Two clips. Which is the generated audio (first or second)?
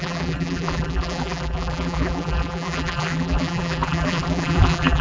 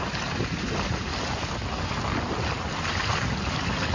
first